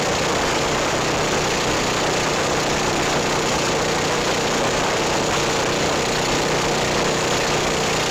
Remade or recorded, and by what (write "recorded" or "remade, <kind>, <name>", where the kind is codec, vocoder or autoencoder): recorded